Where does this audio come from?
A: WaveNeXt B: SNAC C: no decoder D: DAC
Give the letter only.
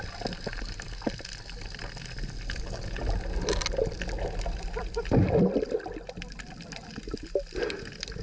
C